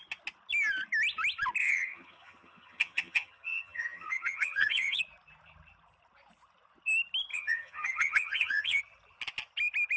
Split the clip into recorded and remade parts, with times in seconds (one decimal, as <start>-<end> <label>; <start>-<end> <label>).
0.0-1.6 recorded; 1.6-5.0 remade; 5.0-7.3 recorded; 7.3-8.8 remade; 8.8-10.0 recorded